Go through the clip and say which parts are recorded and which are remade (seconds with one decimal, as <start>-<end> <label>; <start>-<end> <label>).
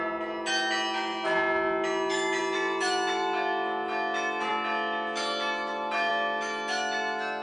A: 0.0-7.4 recorded